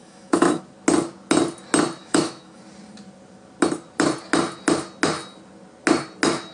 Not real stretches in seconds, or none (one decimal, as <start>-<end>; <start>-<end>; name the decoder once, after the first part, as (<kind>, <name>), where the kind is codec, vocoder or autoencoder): 0.0-0.6 (autoencoder, DAC-VAE); 2.0-2.6